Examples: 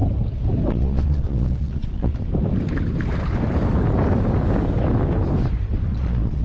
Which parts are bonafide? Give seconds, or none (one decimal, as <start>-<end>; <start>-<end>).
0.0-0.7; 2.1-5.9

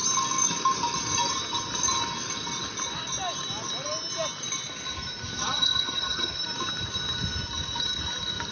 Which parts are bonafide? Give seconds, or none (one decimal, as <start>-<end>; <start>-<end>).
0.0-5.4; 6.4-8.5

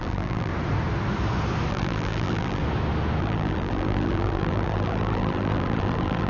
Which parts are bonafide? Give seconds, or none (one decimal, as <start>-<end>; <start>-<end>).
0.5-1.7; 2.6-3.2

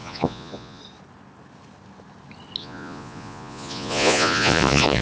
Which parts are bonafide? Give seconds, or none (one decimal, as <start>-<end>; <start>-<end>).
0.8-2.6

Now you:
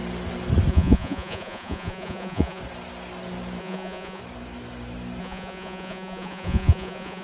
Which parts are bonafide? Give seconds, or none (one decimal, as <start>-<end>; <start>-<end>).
0.0-0.7; 2.6-3.6; 4.2-5.2

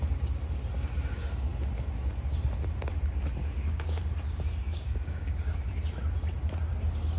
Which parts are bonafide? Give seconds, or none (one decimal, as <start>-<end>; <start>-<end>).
0.0-3.4; 4.0-4.6; 5.7-7.2

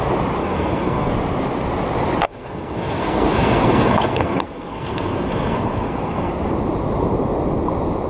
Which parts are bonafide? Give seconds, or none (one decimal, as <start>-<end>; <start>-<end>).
0.0-0.4; 1.1-2.2; 6.3-8.1

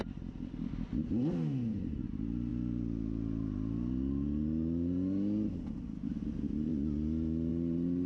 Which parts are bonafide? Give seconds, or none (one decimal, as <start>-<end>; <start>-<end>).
0.0-8.1